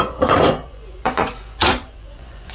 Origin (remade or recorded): remade